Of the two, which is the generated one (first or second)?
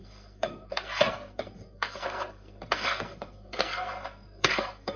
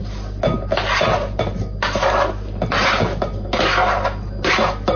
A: first